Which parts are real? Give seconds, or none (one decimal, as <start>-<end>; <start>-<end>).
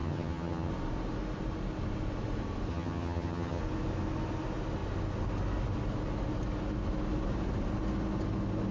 0.7-2.7; 3.6-8.7